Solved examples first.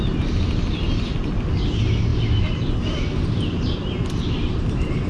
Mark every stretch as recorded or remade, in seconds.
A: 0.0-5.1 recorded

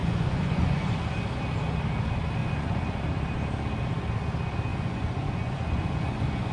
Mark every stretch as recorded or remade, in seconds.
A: 0.0-1.0 remade; 1.0-2.4 recorded; 2.4-3.0 remade; 3.0-4.7 recorded; 4.7-6.5 remade